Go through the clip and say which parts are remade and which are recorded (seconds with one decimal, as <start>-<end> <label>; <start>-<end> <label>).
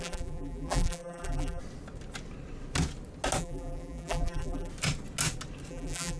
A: 0.0-1.6 remade; 1.6-3.4 recorded; 3.4-4.7 remade; 4.7-5.7 recorded; 5.7-6.2 remade